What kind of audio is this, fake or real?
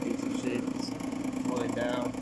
real